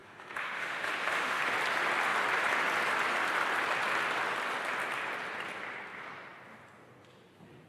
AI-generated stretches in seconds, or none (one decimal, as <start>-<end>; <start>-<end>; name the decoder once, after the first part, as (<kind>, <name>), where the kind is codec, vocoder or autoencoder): 0.0-1.4 (autoencoder, DAC-VAE)